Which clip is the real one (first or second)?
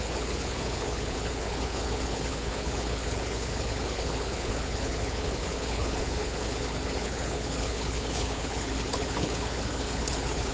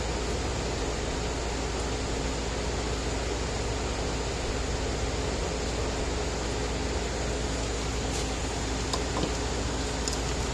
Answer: second